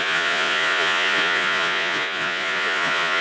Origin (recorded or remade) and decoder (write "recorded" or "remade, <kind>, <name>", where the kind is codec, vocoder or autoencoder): remade, vocoder, Vocos